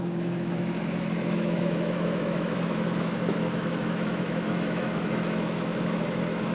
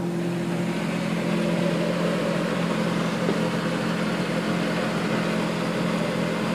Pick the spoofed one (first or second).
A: first